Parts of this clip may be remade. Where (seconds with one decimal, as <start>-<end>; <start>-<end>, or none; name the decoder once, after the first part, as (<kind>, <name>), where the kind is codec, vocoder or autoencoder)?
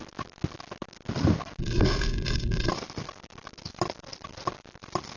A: 1.6-2.7 (codec, SNAC)